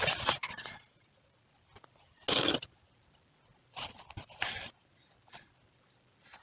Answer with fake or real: real